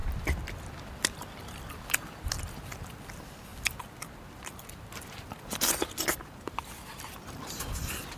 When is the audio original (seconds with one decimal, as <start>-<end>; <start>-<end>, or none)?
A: 0.0-8.2